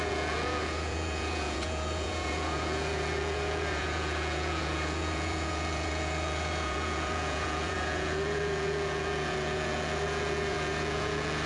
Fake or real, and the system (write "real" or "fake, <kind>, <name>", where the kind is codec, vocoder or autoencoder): fake, vocoder, Vocos